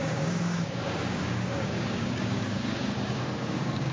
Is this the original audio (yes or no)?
no